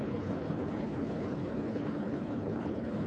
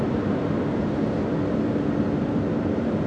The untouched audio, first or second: second